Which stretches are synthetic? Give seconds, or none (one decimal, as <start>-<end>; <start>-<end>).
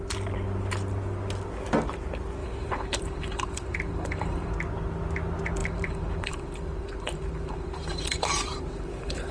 2.4-4.5; 5.6-9.3